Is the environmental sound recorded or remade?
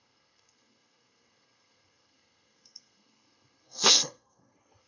remade